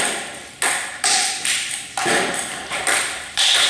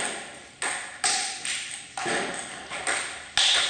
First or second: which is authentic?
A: second